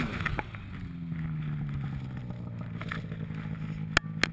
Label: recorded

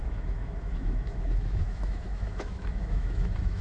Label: remade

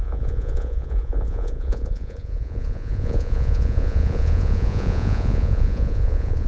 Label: remade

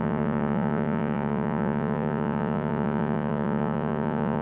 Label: remade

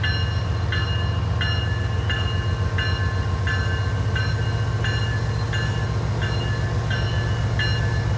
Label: recorded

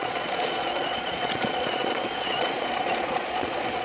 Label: remade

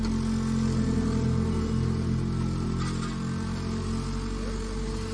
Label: recorded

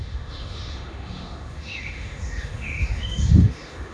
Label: remade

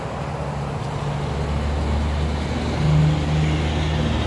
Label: recorded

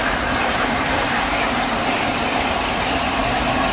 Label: remade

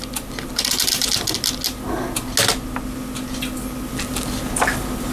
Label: recorded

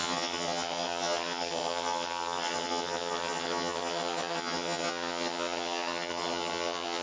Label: remade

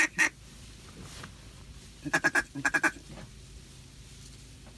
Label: recorded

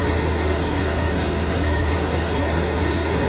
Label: remade